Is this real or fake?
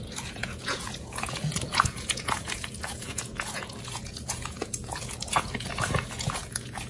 fake